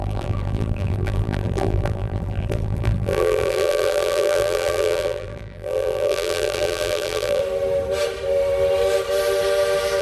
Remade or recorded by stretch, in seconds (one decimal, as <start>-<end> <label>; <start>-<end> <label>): 0.0-7.4 remade; 7.4-10.0 recorded